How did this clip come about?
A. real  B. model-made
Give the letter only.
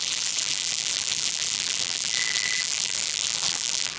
B